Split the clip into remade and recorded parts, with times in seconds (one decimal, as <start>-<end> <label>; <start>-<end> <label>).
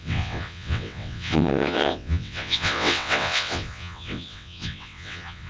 0.0-5.5 remade